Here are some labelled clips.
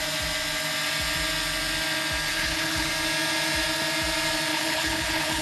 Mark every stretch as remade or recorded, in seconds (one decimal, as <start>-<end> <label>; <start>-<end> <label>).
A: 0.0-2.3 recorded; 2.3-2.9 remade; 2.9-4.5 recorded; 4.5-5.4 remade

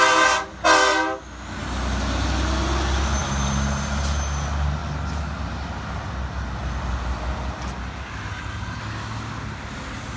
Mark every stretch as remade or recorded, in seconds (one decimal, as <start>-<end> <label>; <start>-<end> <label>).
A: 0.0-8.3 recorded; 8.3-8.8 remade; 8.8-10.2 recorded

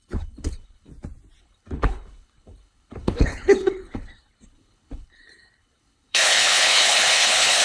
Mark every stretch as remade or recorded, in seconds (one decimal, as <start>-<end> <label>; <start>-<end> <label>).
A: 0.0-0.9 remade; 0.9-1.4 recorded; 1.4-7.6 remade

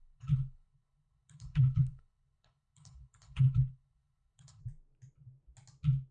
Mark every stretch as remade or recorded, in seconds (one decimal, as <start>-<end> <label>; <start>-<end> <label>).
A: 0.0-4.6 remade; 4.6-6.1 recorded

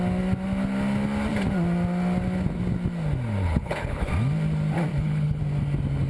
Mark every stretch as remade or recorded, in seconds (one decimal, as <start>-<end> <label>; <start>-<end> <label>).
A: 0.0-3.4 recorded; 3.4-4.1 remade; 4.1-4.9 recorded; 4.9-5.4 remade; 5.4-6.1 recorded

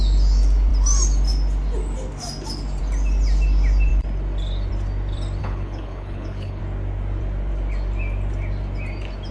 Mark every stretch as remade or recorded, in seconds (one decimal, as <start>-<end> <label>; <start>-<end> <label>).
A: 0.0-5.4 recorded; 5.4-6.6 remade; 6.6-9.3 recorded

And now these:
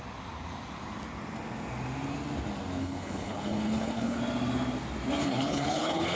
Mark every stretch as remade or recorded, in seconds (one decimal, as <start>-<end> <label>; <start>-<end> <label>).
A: 0.0-2.8 recorded; 2.8-4.2 remade; 4.2-5.2 recorded; 5.2-6.2 remade

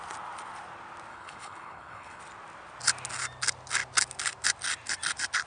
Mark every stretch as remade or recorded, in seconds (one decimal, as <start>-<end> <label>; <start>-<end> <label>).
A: 0.0-1.1 recorded; 1.1-2.2 remade; 2.2-5.5 recorded